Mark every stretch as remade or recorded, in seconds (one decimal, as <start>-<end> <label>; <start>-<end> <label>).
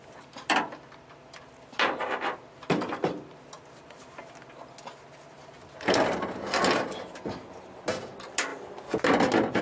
0.0-9.6 recorded